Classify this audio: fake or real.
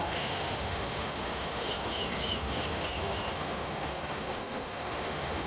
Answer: fake